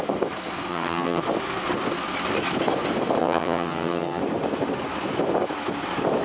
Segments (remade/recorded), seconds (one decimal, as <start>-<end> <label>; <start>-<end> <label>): 0.0-0.7 recorded; 0.7-1.2 remade; 1.2-3.2 recorded; 3.2-4.2 remade; 4.2-6.2 recorded